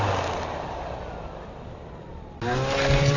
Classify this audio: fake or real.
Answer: real